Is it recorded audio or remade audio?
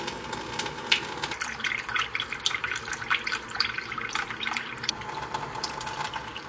remade